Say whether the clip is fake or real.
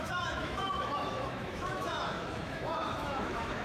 fake